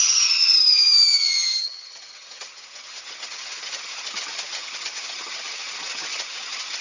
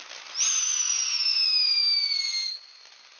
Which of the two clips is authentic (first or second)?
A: second